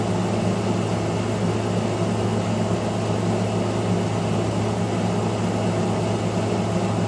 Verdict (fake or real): real